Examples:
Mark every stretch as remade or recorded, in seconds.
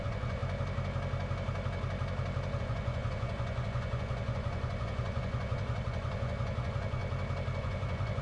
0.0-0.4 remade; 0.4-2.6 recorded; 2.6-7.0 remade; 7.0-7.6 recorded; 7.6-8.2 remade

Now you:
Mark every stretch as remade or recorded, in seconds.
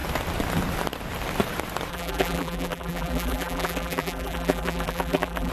0.0-1.9 recorded; 1.9-5.5 remade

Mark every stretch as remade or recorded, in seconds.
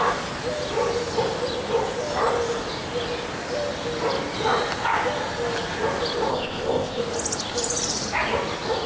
0.0-6.3 recorded; 6.3-7.0 remade; 7.0-8.9 recorded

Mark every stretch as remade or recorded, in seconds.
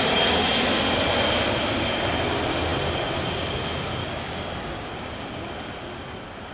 0.0-4.0 recorded; 4.0-4.9 remade; 4.9-6.5 recorded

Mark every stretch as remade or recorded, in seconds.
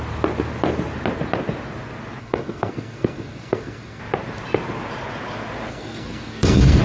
0.0-2.2 recorded; 2.2-4.0 remade; 4.0-5.7 recorded; 5.7-6.8 remade